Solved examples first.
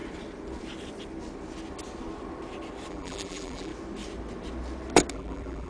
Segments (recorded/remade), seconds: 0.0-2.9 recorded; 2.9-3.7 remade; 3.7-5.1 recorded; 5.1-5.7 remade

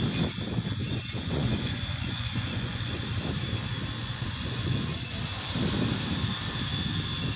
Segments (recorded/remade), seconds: 0.0-0.8 recorded; 0.8-3.0 remade; 3.0-4.0 recorded; 4.0-5.0 remade; 5.0-7.4 recorded

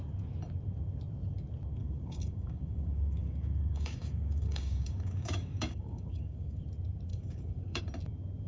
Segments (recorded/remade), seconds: 0.0-1.8 recorded; 1.8-6.6 remade; 6.6-7.1 recorded; 7.1-7.8 remade; 7.8-8.5 recorded